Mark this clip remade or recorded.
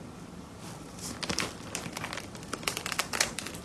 remade